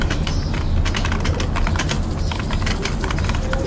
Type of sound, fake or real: real